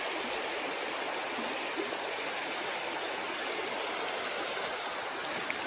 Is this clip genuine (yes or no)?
yes